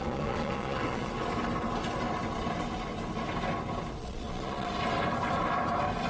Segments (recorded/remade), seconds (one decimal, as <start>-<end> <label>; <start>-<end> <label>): 0.0-1.1 remade; 1.1-4.0 recorded; 4.0-4.7 remade; 4.7-6.1 recorded